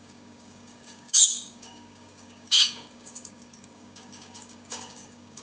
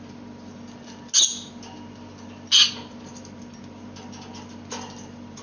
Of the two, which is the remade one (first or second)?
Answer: first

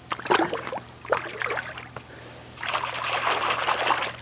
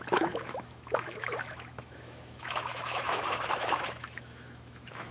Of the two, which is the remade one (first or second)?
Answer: second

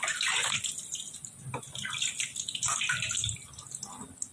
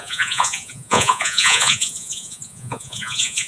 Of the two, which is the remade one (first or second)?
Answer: second